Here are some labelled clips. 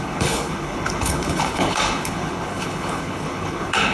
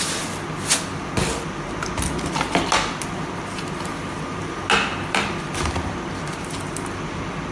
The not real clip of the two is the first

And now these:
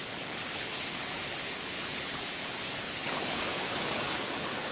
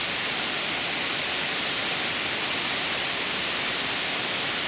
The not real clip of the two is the first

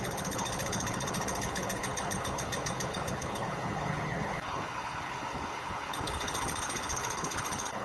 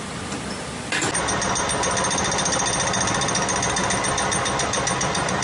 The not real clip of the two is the first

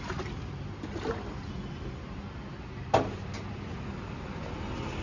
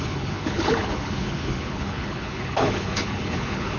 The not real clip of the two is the second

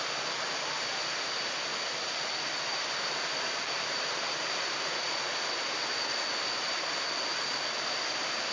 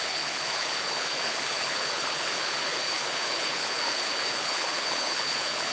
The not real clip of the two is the second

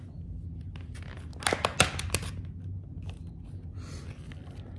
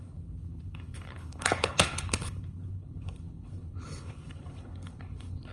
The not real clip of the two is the second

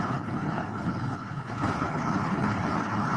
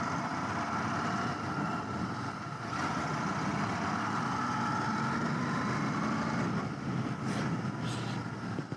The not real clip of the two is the first